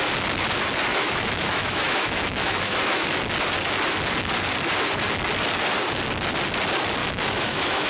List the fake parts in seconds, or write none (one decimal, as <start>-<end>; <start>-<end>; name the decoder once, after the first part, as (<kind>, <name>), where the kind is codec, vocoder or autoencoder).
0.9-3.2 (autoencoder, DAC-VAE); 7.0-7.9